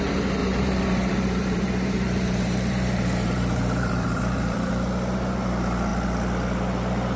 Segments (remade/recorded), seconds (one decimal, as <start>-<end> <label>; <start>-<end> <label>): 0.0-0.4 recorded; 0.4-4.7 remade; 4.7-7.2 recorded